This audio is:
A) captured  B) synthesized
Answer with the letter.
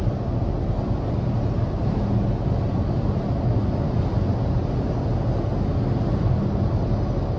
A